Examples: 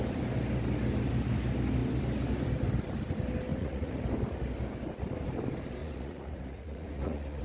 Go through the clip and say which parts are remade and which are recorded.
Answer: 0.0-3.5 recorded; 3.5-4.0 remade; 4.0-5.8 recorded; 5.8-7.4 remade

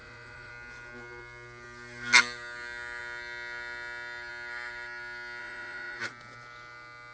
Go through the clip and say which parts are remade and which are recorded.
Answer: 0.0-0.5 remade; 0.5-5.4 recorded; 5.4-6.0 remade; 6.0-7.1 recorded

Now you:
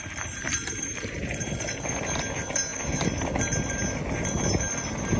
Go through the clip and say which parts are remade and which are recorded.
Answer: 0.0-0.5 recorded; 0.5-1.9 remade; 1.9-5.2 recorded

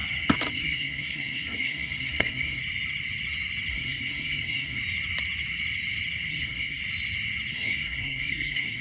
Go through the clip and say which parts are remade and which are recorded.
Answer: 0.0-0.5 recorded; 0.5-2.6 remade; 2.6-3.7 recorded; 3.7-4.8 remade; 4.8-6.3 recorded; 6.3-6.8 remade; 6.8-7.5 recorded; 7.5-8.8 remade

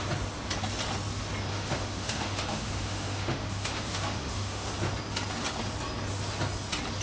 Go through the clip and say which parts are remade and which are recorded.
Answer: 0.0-1.5 recorded; 1.5-4.7 remade; 4.7-7.0 recorded

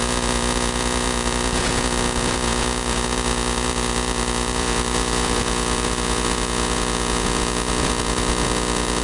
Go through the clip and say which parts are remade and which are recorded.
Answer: 0.0-9.0 remade